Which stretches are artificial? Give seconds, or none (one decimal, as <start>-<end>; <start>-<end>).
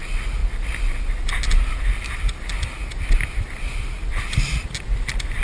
none